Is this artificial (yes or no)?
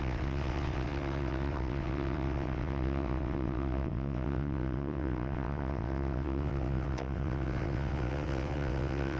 yes